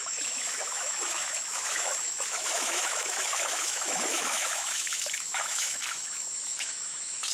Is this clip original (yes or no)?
no